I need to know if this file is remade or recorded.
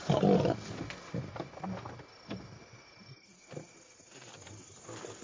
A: recorded